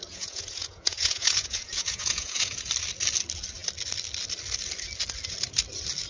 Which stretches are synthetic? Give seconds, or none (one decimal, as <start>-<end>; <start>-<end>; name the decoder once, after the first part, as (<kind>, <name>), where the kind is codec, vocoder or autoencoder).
0.0-2.7 (vocoder, Vocos)